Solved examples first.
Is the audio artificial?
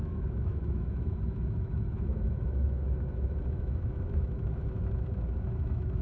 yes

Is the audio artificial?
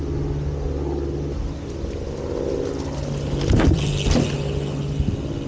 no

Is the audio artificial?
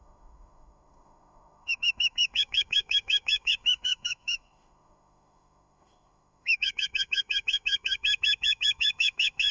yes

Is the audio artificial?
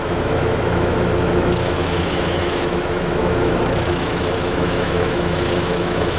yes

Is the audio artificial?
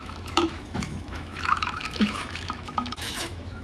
yes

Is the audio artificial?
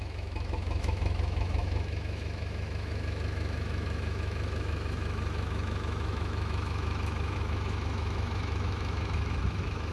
yes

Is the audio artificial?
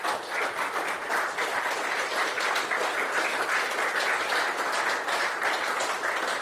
no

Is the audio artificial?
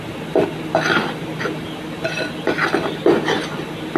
no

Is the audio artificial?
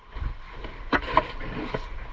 no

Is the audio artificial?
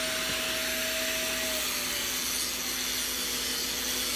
no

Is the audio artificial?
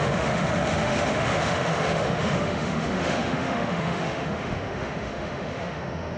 yes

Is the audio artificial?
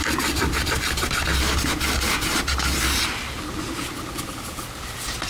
no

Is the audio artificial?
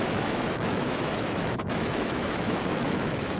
yes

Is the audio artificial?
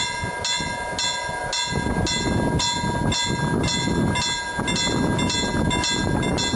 no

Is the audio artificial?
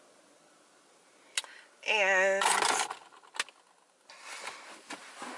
no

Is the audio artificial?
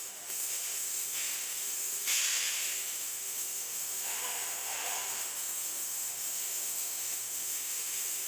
yes